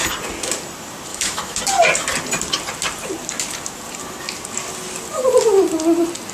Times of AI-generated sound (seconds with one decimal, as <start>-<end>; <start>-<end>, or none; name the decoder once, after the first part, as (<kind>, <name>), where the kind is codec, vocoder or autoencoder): 1.1-1.6 (autoencoder, DAC-VAE)